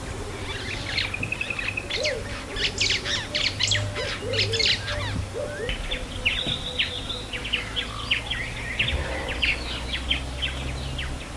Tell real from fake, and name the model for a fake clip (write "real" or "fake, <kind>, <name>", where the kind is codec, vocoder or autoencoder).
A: real